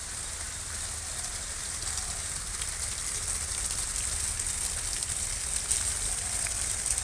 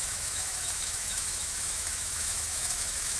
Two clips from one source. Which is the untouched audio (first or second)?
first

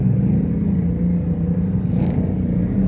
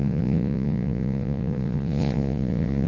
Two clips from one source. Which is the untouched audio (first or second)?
first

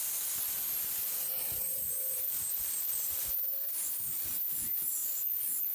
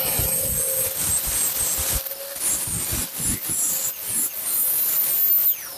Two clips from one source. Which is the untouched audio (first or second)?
second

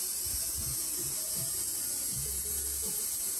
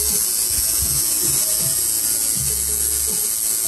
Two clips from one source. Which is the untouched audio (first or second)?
second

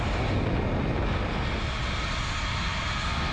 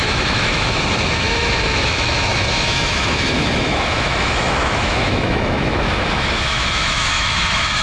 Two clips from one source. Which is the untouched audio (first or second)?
first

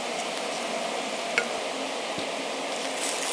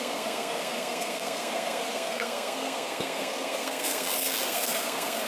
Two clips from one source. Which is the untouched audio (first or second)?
first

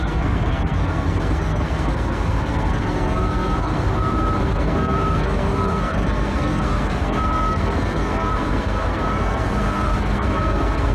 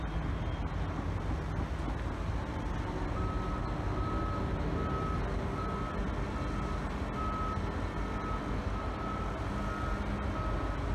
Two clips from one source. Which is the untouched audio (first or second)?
second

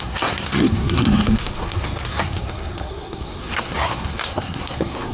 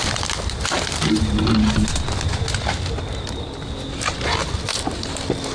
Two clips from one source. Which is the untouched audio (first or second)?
second